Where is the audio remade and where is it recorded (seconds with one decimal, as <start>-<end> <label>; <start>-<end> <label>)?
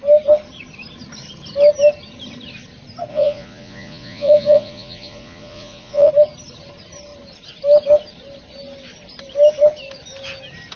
0.0-3.1 recorded; 3.1-6.1 remade; 6.1-10.8 recorded